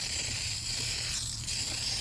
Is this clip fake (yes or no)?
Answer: yes